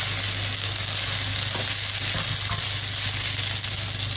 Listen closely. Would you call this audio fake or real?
real